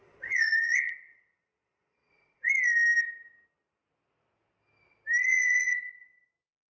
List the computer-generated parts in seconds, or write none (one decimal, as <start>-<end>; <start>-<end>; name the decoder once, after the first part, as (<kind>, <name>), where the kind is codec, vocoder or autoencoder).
0.0-2.5 (vocoder, Vocos); 5.3-6.3